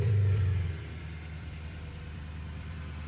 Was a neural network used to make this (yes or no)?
yes